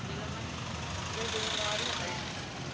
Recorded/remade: recorded